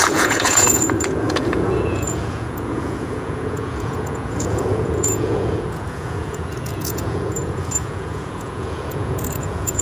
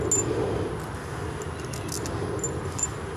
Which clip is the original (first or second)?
second